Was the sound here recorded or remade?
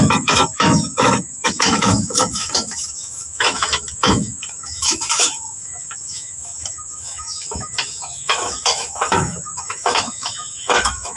remade